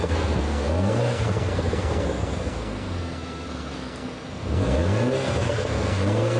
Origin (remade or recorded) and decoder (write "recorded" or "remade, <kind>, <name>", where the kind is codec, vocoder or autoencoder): remade, codec, SNAC